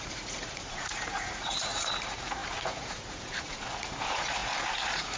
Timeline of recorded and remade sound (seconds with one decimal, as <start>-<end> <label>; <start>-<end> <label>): 0.0-5.2 remade